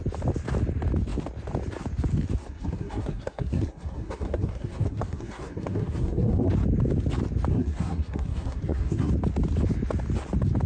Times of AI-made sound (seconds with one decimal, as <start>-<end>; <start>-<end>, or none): 2.4-6.5; 7.5-9.1